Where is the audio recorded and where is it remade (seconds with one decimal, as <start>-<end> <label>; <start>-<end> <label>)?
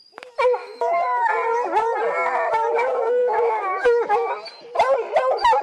0.0-0.6 recorded; 0.6-1.3 remade; 1.3-3.2 recorded; 3.2-4.3 remade; 4.3-5.6 recorded